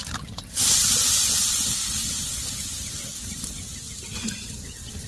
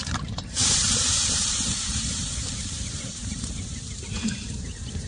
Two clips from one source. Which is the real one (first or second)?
first